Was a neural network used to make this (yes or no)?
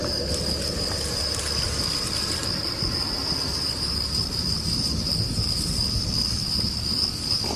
no